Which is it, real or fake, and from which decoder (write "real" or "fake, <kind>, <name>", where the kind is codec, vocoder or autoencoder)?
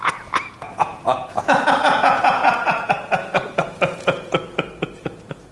fake, vocoder, Vocos